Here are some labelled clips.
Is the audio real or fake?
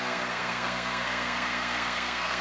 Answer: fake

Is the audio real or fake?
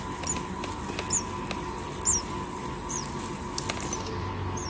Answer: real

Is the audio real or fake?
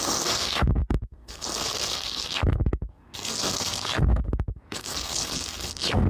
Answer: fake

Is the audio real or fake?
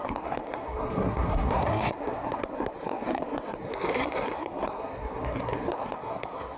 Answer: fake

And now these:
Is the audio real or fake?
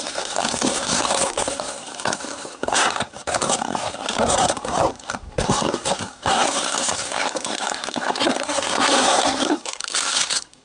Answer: fake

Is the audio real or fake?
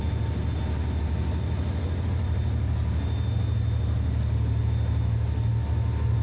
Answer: real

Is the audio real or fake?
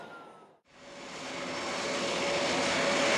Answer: real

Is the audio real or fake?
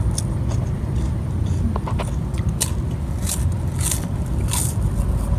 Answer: real